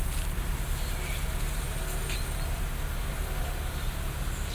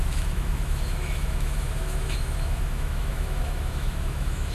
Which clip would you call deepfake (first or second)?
second